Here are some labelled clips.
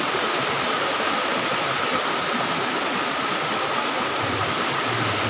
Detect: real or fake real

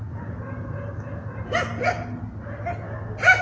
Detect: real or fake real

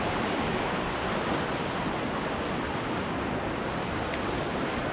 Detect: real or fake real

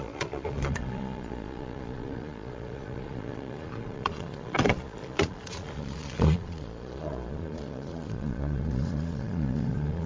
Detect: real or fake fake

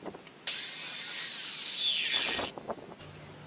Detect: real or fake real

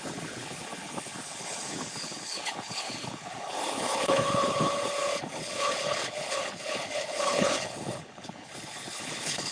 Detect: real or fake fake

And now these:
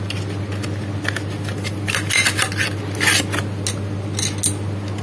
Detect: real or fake real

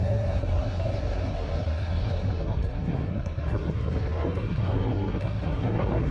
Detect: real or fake fake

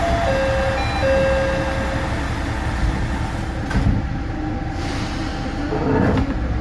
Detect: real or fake real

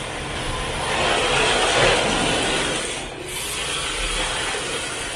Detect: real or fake real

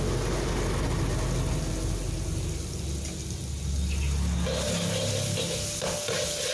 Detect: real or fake real